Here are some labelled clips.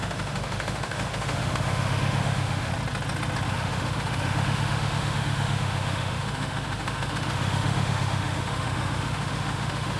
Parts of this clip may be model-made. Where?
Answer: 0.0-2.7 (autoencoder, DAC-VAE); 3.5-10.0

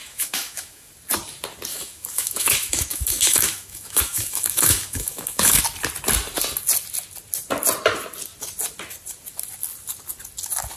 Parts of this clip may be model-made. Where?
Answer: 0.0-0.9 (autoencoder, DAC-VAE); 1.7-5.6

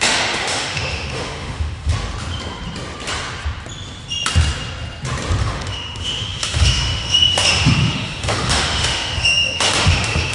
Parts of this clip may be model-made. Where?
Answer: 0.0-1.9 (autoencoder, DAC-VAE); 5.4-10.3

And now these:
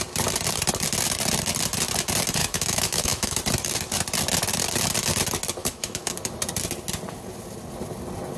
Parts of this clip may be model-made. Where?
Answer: 2.4-3.4 (autoencoder, DAC-VAE); 5.6-6.1

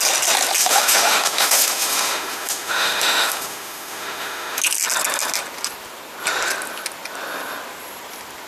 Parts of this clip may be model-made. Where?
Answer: 0.6-4.6 (autoencoder, DAC-VAE)

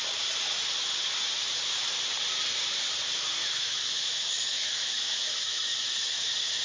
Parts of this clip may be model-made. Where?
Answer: 3.4-6.6 (autoencoder, DAC-VAE)